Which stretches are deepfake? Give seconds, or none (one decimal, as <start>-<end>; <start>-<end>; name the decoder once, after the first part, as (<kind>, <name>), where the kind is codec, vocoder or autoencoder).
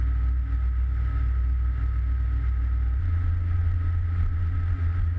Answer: 3.0-5.2 (vocoder, Vocos)